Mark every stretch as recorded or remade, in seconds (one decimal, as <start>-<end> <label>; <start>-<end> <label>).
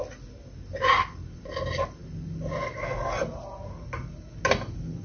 0.0-5.0 recorded